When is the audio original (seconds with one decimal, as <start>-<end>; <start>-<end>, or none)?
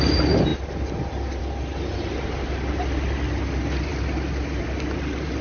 0.0-5.4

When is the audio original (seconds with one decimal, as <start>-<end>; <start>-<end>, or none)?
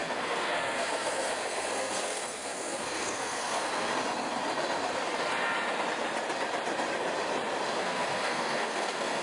3.9-7.8